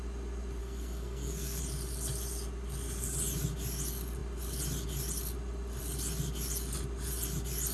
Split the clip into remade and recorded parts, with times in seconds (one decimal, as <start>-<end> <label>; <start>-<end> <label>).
0.0-0.6 recorded; 0.6-1.6 remade; 1.6-7.7 recorded